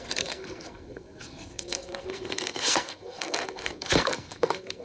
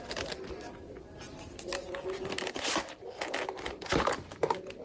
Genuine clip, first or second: second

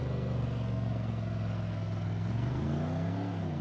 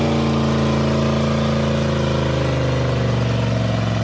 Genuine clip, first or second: second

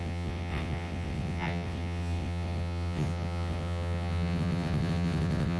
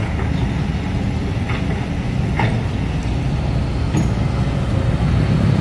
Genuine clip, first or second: second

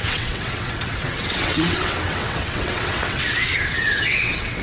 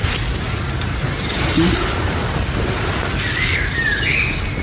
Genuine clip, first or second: second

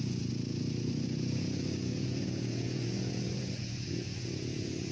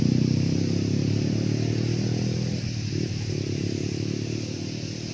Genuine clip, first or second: second